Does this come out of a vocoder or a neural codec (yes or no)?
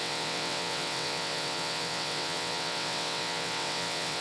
yes